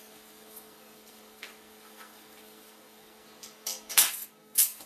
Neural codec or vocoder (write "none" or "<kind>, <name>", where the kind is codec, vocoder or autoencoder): codec, SNAC